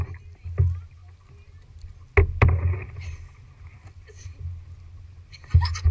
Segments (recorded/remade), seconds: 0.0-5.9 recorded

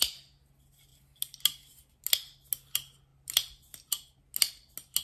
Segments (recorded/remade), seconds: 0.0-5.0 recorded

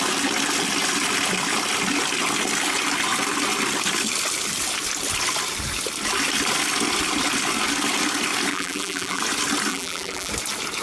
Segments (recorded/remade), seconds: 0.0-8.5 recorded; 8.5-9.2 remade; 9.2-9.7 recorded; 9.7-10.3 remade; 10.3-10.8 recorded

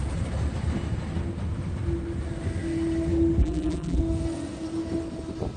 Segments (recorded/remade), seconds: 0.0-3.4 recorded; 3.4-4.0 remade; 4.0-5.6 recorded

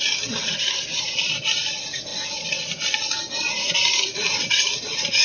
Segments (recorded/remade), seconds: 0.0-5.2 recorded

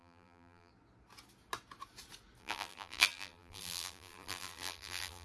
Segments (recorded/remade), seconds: 0.0-0.7 remade; 0.7-2.4 recorded; 2.4-5.2 remade

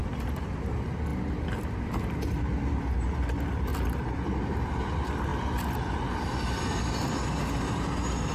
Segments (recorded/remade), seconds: 0.0-0.5 remade; 0.5-1.1 recorded; 1.1-2.4 remade; 2.4-3.7 recorded; 3.7-4.5 remade; 4.5-8.3 recorded